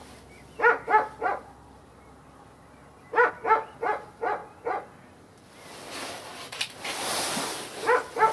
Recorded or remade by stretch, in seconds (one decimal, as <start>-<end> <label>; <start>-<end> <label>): 0.0-8.3 recorded